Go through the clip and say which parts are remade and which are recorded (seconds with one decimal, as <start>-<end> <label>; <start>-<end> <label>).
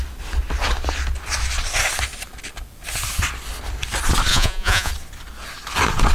0.0-4.3 recorded; 4.3-4.9 remade; 4.9-6.1 recorded